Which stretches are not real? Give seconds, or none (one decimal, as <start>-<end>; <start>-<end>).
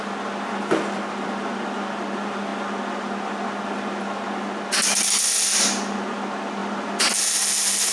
none